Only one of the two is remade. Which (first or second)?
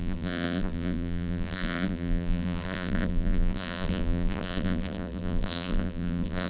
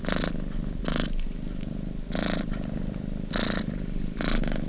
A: first